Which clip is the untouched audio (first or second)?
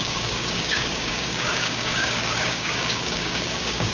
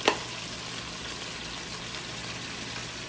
second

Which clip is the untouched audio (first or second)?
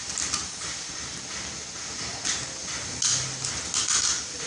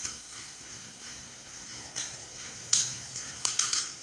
first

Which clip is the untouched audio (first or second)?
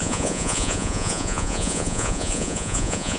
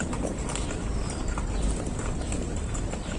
second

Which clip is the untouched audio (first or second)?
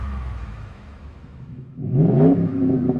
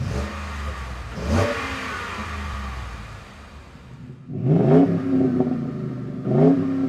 second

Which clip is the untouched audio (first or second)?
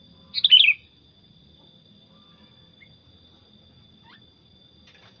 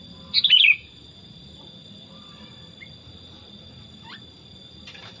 first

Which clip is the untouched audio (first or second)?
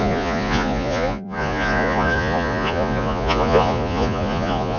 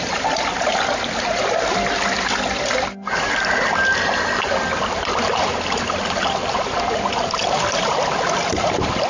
second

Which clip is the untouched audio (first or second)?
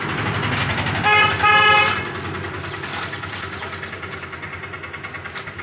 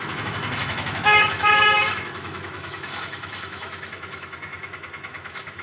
first